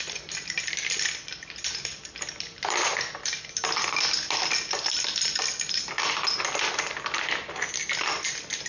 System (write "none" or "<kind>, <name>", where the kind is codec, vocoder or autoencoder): none